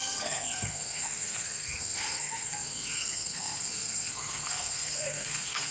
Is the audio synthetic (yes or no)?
yes